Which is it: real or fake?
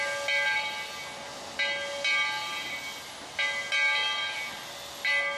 real